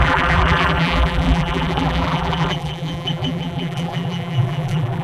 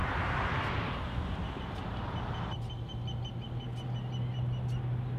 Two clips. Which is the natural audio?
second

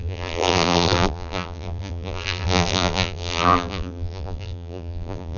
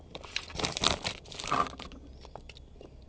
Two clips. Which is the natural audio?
second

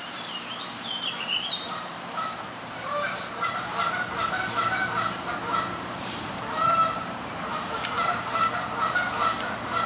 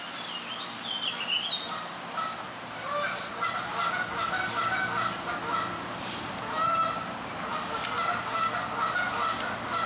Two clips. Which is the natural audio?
second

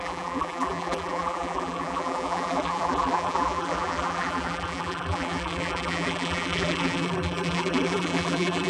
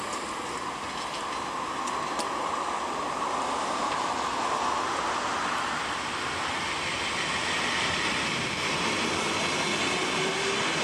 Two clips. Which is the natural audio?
second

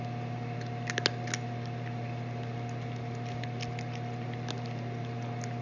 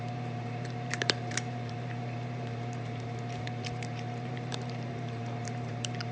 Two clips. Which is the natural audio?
first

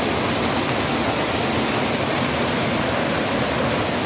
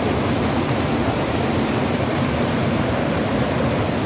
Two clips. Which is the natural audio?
first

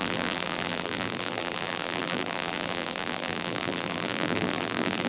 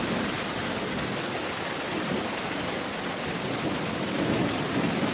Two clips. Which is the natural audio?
second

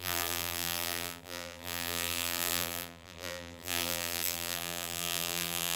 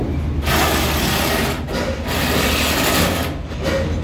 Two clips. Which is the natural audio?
second